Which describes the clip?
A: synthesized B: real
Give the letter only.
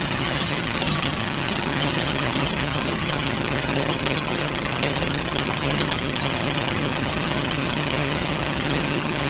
A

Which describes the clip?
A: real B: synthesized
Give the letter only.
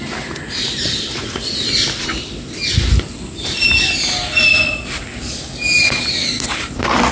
A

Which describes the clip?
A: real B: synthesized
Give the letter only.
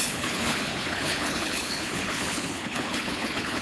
B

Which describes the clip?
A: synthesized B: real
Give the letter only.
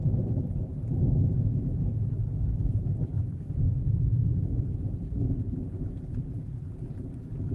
B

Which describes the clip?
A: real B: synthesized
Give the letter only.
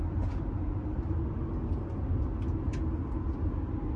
A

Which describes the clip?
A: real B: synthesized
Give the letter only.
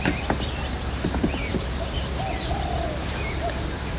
A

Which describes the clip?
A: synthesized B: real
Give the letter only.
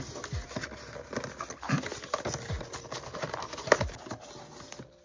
B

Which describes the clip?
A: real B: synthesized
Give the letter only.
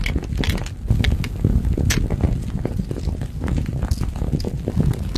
A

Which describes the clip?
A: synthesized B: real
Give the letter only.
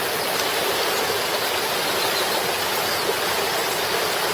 B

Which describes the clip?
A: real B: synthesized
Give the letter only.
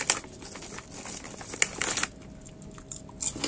A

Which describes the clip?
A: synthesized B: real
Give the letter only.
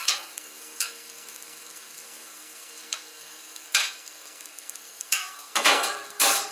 A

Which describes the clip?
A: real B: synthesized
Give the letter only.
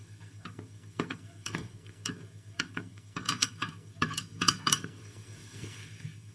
B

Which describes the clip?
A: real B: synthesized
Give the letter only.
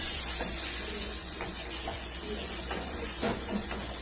B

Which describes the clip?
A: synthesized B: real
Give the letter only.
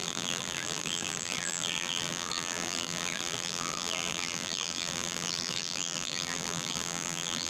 A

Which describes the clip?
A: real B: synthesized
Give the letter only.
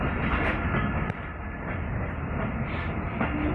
A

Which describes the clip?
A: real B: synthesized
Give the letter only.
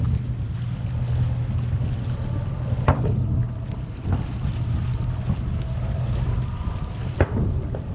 A